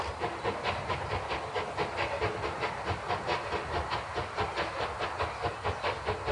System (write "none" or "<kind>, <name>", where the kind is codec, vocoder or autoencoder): none